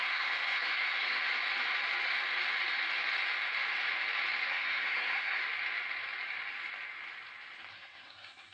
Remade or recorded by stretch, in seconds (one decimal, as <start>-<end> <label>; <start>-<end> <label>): 0.0-1.2 remade; 1.2-4.5 recorded; 4.5-5.4 remade; 5.4-7.7 recorded; 7.7-8.5 remade